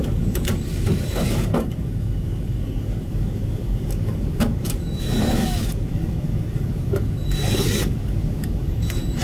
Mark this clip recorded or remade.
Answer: remade